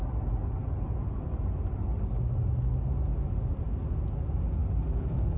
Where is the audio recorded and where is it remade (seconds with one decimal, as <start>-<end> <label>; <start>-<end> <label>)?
0.0-5.4 recorded